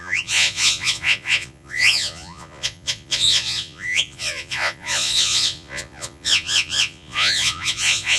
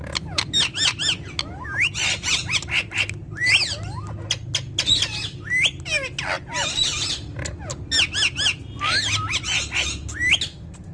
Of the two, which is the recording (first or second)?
second